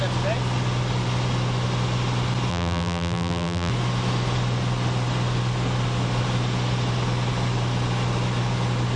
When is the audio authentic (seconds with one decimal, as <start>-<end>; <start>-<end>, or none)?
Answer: 0.0-2.5; 3.7-9.0

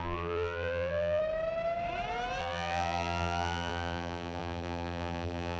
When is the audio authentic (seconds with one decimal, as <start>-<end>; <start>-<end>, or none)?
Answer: 1.2-2.4

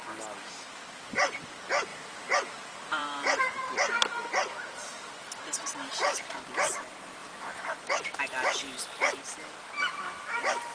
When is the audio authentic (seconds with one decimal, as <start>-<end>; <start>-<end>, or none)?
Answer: 0.0-1.9; 3.4-10.7